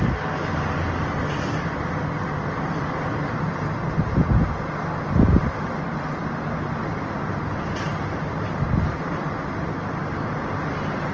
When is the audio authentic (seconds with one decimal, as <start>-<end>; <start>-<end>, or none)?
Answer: 0.0-11.1